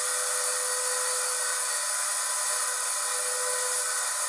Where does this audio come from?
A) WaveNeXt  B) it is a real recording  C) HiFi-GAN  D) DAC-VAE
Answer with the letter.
B